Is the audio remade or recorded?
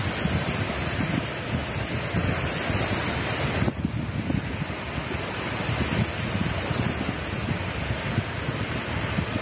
recorded